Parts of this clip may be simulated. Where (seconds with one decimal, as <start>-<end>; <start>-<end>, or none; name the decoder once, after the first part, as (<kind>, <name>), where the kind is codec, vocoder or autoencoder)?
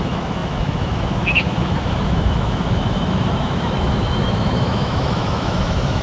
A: 0.0-6.0 (autoencoder, DAC-VAE)